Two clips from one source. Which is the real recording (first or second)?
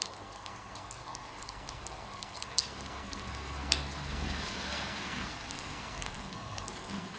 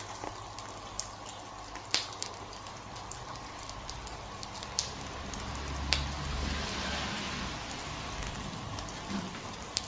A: second